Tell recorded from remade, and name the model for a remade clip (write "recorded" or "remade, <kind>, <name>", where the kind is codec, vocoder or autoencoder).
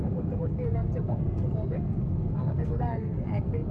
remade, codec, SNAC